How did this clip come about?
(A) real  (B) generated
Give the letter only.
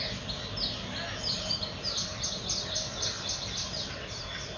A